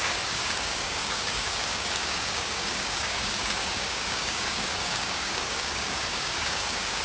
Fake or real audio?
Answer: fake